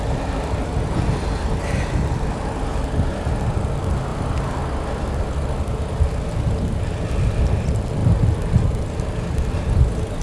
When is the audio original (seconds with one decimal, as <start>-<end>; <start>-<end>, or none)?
0.0-10.2